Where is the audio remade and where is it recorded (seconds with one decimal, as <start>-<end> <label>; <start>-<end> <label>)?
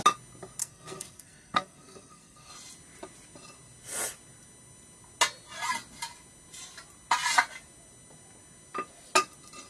0.0-0.6 recorded; 0.6-2.5 remade; 2.5-9.7 recorded